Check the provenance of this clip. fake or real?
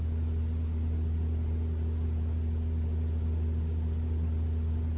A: real